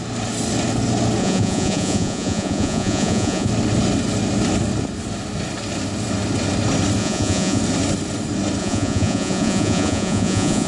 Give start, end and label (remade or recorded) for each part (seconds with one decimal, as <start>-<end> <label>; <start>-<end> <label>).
0.0-1.2 recorded; 1.2-3.5 remade; 3.5-7.0 recorded; 7.0-7.6 remade; 7.6-8.6 recorded; 8.6-10.7 remade